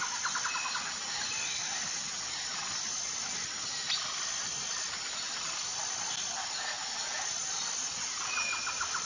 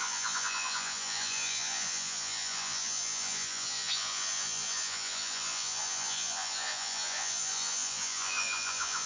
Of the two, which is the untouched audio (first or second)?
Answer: first